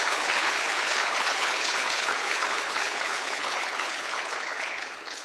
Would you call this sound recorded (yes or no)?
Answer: no